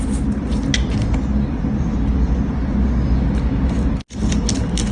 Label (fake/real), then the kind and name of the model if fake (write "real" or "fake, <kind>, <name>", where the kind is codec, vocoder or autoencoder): real